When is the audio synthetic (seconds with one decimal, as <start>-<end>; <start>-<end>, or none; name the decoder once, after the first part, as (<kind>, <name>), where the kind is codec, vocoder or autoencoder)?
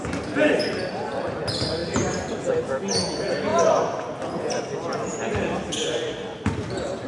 none